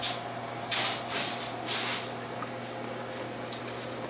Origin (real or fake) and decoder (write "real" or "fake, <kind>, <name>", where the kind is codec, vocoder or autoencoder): real